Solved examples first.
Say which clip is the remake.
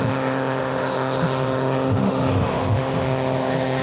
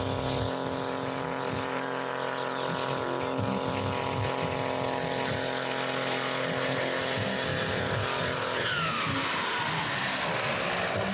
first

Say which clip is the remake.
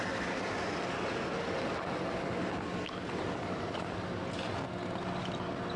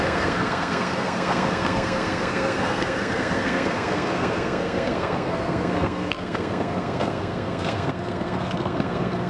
second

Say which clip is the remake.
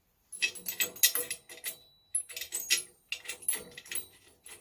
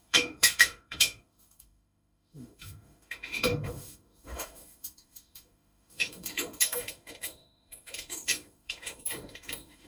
second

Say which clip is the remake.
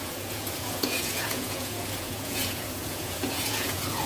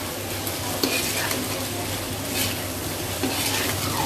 first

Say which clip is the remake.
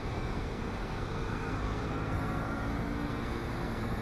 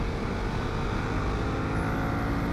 first